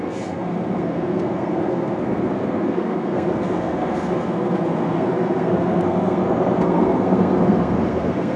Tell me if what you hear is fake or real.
fake